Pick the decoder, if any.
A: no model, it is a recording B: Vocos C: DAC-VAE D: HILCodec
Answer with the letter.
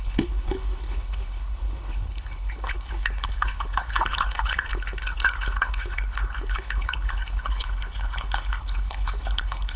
D